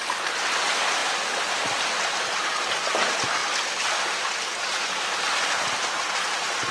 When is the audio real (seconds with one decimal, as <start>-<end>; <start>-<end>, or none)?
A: 0.0-6.7